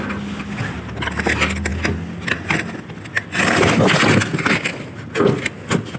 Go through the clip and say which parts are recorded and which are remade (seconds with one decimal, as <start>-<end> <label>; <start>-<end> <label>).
0.0-6.0 recorded